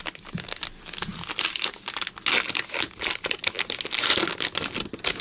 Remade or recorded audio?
recorded